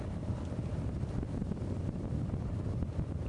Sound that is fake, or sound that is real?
real